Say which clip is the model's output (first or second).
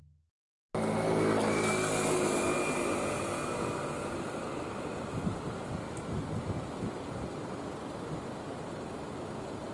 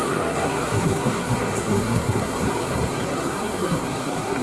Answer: second